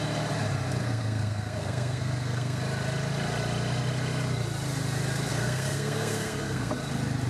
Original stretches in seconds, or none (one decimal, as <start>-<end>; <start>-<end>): 0.0-0.8; 2.6-5.3; 6.7-7.3